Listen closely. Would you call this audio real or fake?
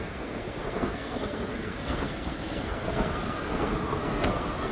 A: fake